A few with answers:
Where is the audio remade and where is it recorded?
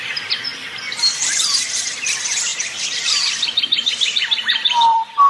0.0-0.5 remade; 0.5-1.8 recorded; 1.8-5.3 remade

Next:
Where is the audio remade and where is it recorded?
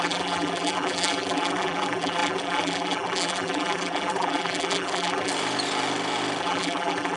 0.0-5.3 remade; 5.3-6.4 recorded; 6.4-7.2 remade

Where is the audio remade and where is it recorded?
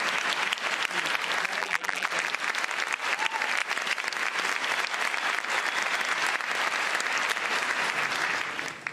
0.0-1.6 recorded; 1.6-2.1 remade; 2.1-8.9 recorded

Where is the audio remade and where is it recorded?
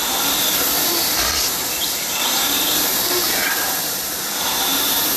0.0-1.7 recorded; 1.7-5.2 remade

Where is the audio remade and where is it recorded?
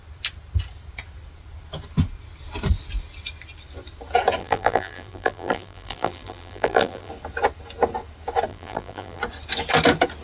0.0-4.4 recorded; 4.4-7.1 remade; 7.1-8.5 recorded; 8.5-9.2 remade; 9.2-10.2 recorded